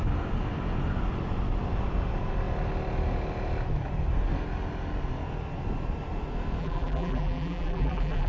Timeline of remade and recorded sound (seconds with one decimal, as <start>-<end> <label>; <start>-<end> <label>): 0.0-6.6 recorded; 6.6-8.3 remade